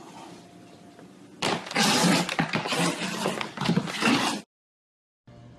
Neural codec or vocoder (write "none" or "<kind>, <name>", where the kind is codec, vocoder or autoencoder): none